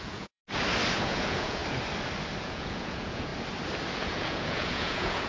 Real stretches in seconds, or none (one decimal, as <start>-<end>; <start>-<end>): 0.4-0.9; 1.6-2.4; 3.3-4.0